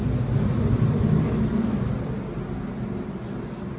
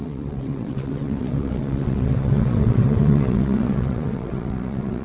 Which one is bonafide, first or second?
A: first